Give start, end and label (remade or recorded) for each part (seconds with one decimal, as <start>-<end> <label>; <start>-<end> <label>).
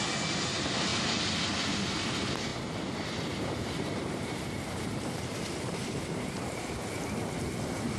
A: 0.0-2.5 recorded; 2.5-6.7 remade; 6.7-8.0 recorded